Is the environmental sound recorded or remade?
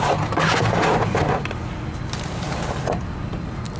recorded